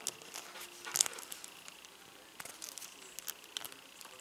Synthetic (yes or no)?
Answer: no